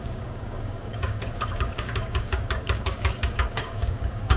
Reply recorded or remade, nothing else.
remade